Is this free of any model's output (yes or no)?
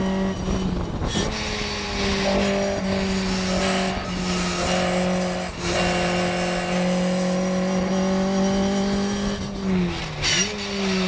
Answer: yes